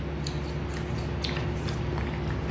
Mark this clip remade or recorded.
recorded